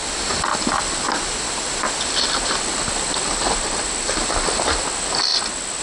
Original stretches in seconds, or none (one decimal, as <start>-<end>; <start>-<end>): 0.0-5.8